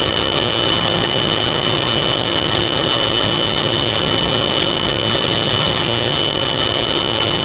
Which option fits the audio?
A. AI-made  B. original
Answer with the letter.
A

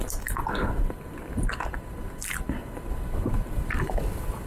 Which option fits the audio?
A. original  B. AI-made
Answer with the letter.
A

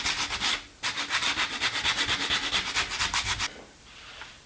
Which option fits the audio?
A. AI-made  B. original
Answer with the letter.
B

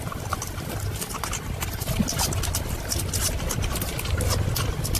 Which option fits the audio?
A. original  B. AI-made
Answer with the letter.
A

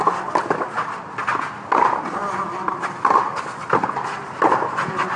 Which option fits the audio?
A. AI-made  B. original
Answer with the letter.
B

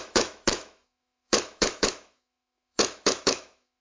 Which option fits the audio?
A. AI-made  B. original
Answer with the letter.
A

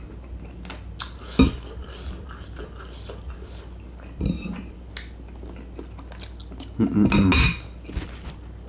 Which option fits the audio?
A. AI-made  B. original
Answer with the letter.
B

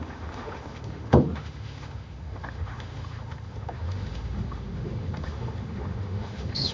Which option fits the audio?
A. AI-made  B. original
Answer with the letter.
A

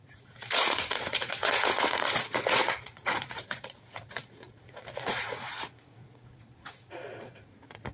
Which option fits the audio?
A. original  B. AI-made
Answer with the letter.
B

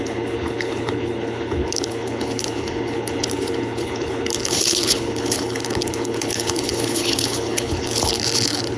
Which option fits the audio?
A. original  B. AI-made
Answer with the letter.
B